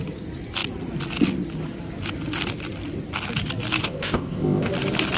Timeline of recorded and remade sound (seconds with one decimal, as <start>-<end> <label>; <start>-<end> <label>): 0.0-3.8 recorded; 3.8-4.7 remade; 4.7-5.2 recorded